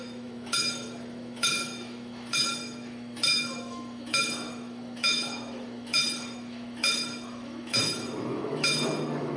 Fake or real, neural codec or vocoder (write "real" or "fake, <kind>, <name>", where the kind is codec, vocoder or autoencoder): fake, autoencoder, DAC-VAE